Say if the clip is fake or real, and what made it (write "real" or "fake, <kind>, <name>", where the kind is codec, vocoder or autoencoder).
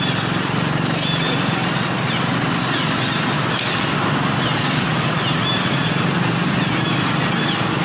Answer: real